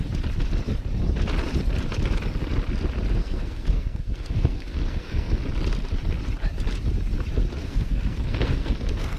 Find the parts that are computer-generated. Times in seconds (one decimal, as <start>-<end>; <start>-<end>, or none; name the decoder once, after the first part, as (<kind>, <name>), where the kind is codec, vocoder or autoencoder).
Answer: 3.2-5.4 (codec, SNAC); 7.6-9.2